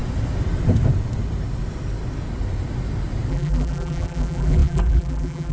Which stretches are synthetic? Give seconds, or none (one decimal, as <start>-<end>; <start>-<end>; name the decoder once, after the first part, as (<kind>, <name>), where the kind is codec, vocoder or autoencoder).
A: 3.3-5.5 (vocoder, BigVGAN v2)